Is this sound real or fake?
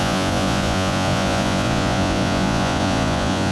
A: fake